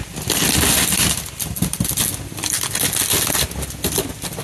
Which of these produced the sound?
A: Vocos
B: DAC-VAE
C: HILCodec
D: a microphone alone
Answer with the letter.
D